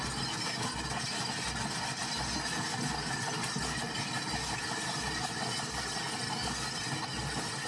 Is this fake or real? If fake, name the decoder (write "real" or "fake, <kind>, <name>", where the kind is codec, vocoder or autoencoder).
real